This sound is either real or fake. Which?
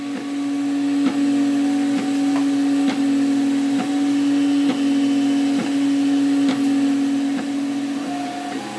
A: real